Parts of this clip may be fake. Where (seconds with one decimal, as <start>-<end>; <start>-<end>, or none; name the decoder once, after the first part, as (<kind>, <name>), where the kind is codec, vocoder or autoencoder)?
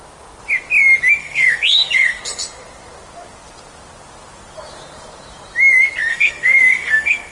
1.2-2.2 (codec, SNAC); 6.1-7.3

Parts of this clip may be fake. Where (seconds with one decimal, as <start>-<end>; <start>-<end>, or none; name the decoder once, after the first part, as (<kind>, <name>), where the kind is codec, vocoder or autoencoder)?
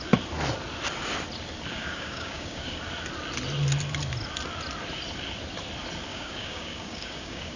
1.7-2.8 (codec, DAC); 6.1-7.6